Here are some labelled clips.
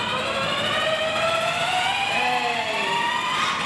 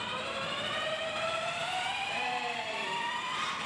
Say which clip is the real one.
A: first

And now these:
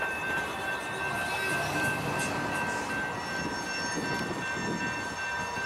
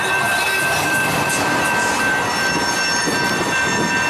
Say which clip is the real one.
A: first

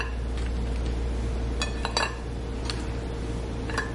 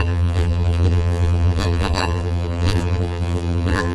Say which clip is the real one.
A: first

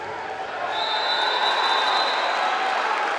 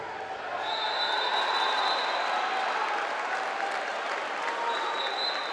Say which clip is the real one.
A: first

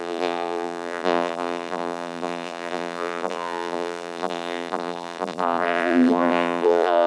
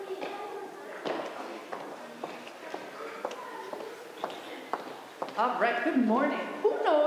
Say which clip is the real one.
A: second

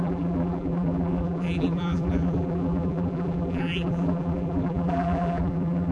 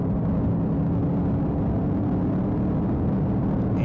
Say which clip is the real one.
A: second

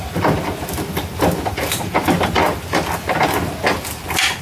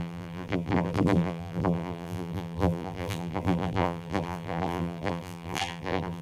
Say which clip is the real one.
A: first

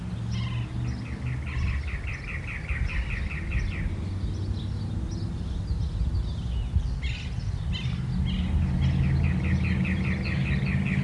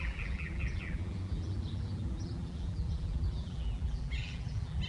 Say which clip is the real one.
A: first